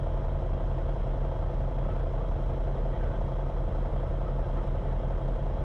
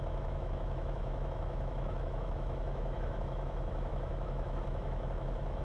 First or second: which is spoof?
second